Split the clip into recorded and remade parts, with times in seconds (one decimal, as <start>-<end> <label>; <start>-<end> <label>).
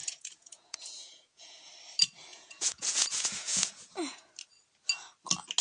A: 0.0-1.7 remade; 1.7-2.3 recorded; 2.3-4.3 remade; 4.3-5.6 recorded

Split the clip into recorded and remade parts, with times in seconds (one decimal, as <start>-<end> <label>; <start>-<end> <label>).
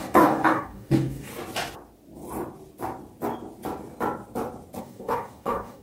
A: 0.0-1.3 remade; 1.3-4.8 recorded; 4.8-5.8 remade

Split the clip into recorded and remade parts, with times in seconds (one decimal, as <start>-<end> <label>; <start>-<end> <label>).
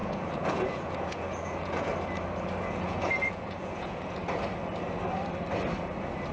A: 0.0-1.9 remade; 1.9-2.6 recorded; 2.6-4.2 remade; 4.2-6.3 recorded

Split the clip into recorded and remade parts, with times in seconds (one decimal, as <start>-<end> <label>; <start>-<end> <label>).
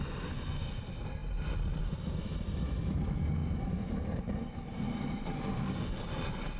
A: 0.0-6.6 recorded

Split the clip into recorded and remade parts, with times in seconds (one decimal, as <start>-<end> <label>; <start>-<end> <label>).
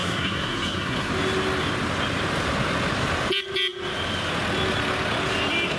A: 0.0-1.1 remade; 1.1-5.8 recorded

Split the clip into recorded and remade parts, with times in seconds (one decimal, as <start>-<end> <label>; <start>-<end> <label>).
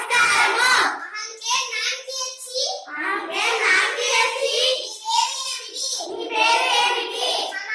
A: 0.0-4.5 recorded; 4.5-6.1 remade; 6.1-7.7 recorded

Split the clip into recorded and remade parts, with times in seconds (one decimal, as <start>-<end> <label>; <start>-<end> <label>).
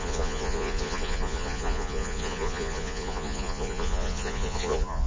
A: 0.0-5.1 remade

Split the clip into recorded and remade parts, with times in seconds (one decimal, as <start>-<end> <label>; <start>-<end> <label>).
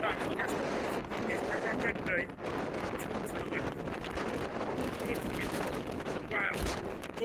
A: 0.0-4.5 recorded; 4.5-6.8 remade; 6.8-7.2 recorded